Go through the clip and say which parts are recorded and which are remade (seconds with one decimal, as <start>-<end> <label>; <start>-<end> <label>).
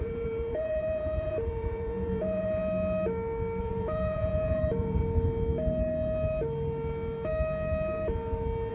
0.0-2.6 remade; 2.6-3.6 recorded; 3.6-5.0 remade; 5.0-8.7 recorded